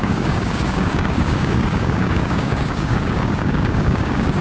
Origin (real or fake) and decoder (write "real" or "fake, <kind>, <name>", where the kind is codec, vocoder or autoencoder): fake, codec, DAC